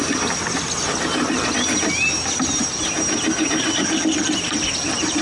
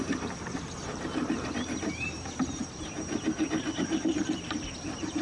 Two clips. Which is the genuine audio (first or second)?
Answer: first